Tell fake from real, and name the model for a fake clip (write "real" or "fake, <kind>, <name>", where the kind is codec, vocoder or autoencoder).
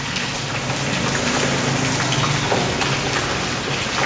real